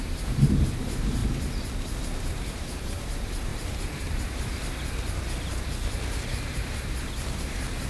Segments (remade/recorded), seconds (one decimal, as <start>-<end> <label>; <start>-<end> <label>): 0.0-1.2 remade; 1.2-2.0 recorded; 2.0-3.5 remade; 3.5-4.0 recorded; 4.0-4.6 remade; 4.6-6.4 recorded; 6.4-7.9 remade